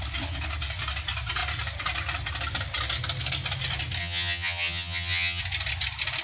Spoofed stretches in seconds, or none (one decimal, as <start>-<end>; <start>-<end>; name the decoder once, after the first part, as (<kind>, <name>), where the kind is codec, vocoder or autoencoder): 4.0-5.4 (vocoder, HiFi-GAN)